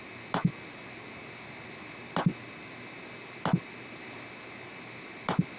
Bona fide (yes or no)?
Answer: yes